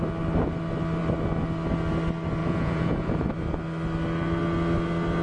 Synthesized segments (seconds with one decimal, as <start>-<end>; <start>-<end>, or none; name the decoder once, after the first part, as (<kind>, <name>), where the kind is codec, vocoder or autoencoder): 2.4-3.3 (vocoder, Vocos)